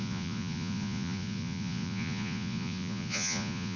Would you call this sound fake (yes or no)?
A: yes